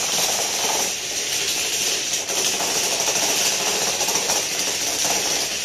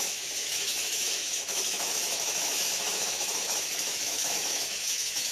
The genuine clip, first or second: first